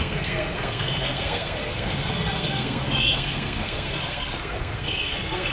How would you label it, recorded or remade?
remade